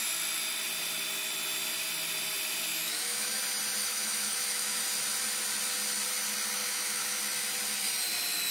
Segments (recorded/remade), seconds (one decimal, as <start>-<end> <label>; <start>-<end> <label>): 0.0-2.7 recorded; 2.7-3.4 remade; 3.4-3.8 recorded; 3.8-4.8 remade; 4.8-6.6 recorded; 6.6-7.2 remade; 7.2-8.5 recorded